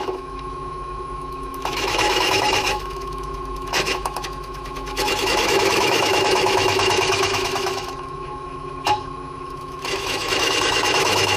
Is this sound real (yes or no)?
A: no